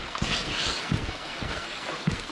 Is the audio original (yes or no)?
no